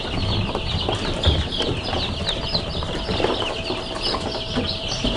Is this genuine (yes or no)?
yes